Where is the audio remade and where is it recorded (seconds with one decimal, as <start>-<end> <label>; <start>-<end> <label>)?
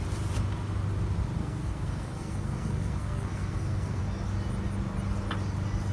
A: 0.0-1.4 recorded; 1.4-4.0 remade; 4.0-5.9 recorded